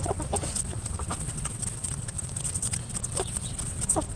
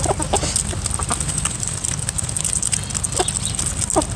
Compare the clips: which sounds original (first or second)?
second